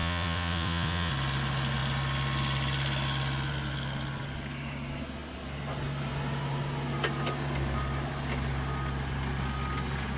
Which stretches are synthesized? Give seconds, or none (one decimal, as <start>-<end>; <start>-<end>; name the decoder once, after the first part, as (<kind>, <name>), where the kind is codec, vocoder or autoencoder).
0.0-1.1 (vocoder, Vocos)

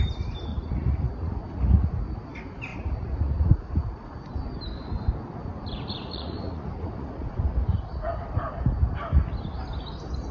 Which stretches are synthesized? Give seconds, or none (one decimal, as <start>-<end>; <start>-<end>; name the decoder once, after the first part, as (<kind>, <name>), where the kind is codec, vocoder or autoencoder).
0.5-2.0 (vocoder, Vocos); 2.7-4.1; 5.9-7.4

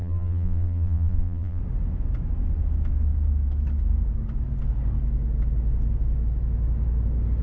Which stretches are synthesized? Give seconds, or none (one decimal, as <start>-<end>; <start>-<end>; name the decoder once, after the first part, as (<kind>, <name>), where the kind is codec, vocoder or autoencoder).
0.0-1.6 (vocoder, BigVGAN v2)

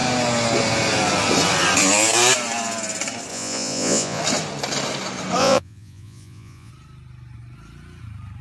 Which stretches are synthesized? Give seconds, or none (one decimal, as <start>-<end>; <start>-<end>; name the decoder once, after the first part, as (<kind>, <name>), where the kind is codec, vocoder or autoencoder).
3.3-4.2 (vocoder, Vocos); 5.4-6.7

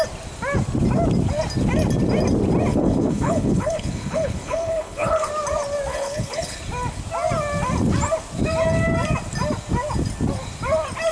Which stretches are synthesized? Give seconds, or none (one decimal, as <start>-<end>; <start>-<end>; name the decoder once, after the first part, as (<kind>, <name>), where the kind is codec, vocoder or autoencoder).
2.7-5.3 (codec, HILCodec); 5.9-6.6

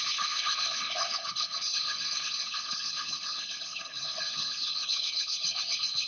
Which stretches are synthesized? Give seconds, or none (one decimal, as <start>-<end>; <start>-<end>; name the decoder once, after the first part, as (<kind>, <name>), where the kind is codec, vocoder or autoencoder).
0.0-6.1 (codec, HILCodec)

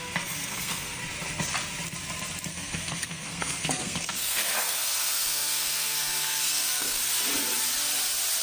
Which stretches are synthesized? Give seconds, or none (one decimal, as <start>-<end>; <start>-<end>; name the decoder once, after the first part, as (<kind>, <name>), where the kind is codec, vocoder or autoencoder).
0.0-1.0 (codec, SNAC); 2.5-7.0

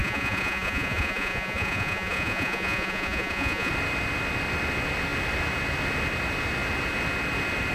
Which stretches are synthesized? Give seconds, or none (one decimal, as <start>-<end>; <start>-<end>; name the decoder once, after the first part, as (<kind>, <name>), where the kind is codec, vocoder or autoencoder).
0.0-3.7 (vocoder, Vocos)